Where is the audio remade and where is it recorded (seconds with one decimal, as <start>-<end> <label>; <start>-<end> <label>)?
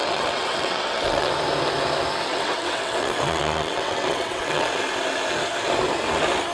0.0-1.3 remade; 1.3-2.3 recorded; 2.3-4.8 remade; 4.8-6.5 recorded